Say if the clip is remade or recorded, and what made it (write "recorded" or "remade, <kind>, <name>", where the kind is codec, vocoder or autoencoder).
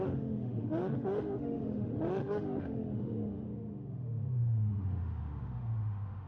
remade, autoencoder, DAC-VAE